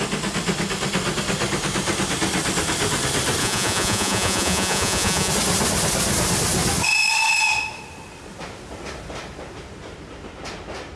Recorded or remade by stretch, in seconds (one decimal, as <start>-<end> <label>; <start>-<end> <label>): 0.0-3.4 recorded; 3.4-5.3 remade; 5.3-11.0 recorded